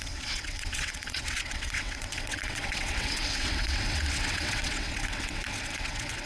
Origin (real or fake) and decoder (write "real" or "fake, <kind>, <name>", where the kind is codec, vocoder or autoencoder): fake, vocoder, WaveNeXt